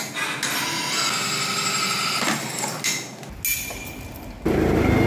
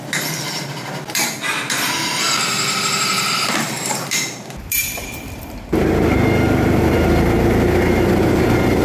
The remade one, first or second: second